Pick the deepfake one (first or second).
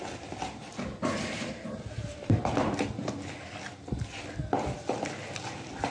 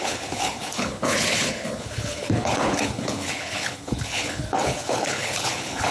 second